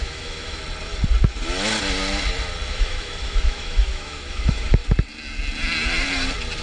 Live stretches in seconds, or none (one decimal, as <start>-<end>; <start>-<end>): 0.6-2.7; 4.8-6.6